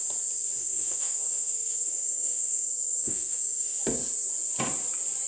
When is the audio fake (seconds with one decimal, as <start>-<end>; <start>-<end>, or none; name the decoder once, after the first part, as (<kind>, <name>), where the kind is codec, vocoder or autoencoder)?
0.6-3.8 (autoencoder, DAC-VAE)